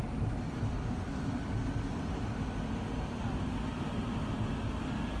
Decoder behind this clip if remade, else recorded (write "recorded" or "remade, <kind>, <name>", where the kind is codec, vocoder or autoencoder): recorded